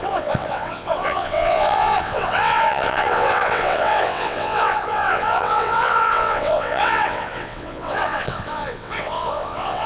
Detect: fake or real fake